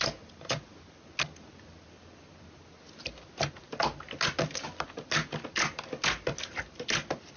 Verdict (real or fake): real